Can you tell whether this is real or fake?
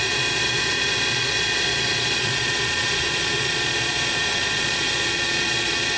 fake